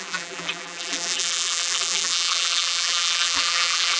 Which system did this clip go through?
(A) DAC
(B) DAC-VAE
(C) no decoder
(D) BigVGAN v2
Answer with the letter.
D